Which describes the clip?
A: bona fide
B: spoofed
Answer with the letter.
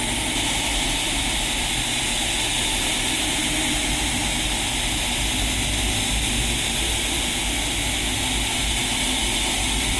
A